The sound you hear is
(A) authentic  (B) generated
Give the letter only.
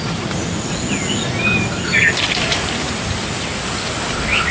A